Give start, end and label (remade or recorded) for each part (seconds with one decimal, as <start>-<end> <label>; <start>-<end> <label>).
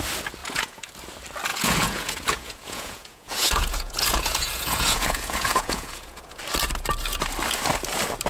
0.0-0.4 recorded; 0.4-0.9 remade; 0.9-1.5 recorded; 1.5-6.4 remade; 6.4-8.3 recorded